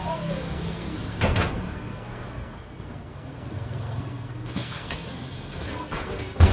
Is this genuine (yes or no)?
no